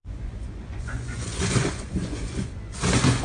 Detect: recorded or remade remade